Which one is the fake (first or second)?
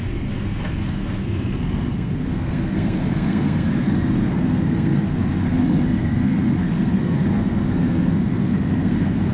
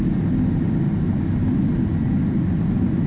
first